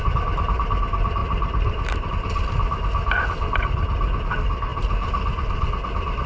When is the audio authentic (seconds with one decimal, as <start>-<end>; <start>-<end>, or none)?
0.0-6.3